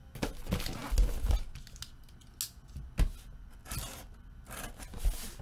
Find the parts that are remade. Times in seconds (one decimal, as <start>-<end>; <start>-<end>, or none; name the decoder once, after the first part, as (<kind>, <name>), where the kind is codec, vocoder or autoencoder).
none